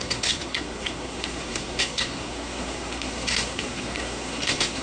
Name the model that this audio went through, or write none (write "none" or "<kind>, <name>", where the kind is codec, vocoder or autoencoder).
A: codec, SNAC